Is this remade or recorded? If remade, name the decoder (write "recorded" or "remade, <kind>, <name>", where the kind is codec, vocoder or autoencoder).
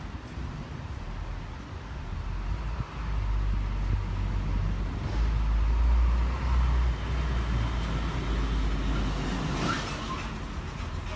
recorded